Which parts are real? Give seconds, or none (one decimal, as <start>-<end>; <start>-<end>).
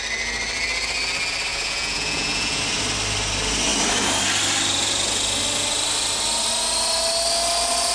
0.0-1.5; 2.6-7.9